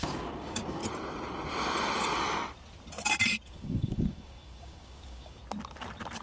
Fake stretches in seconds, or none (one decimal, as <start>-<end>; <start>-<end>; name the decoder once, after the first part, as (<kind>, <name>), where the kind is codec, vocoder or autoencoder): 0.0-0.8 (codec, DAC); 3.5-5.4